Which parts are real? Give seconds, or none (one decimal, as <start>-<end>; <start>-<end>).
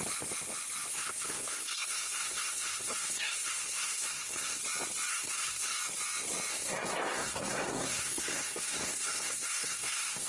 0.0-0.9; 4.6-5.1; 5.8-6.5